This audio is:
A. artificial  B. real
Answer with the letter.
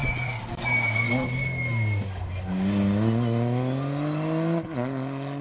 B